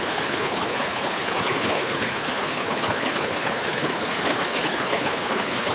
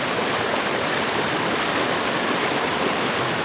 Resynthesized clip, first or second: first